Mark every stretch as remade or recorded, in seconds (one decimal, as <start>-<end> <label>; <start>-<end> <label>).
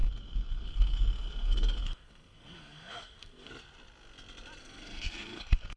0.0-3.5 remade; 3.5-4.6 recorded; 4.6-5.8 remade